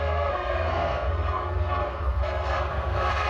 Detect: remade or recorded remade